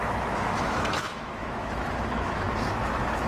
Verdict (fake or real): fake